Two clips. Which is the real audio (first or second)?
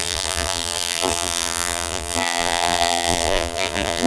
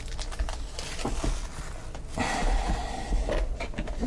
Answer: second